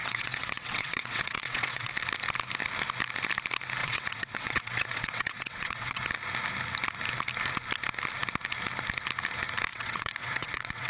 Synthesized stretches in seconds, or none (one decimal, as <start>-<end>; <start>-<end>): 0.0-1.9; 3.8-6.0; 9.7-10.9